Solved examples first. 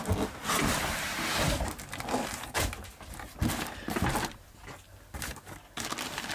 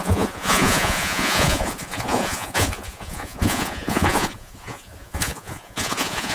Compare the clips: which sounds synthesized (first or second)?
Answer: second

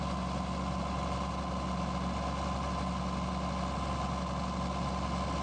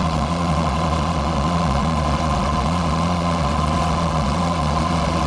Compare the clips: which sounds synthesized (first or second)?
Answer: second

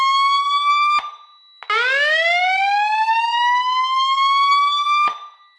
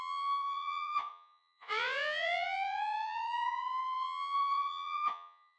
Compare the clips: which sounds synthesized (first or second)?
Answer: second